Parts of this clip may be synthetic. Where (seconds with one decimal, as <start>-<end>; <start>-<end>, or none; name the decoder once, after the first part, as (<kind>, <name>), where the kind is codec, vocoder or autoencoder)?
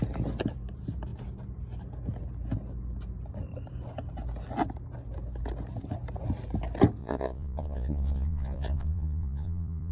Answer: 7.0-9.9 (vocoder, Vocos)